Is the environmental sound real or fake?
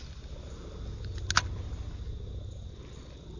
real